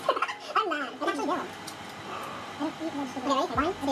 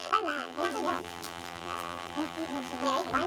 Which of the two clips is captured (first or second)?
first